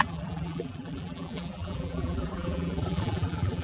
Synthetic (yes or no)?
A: yes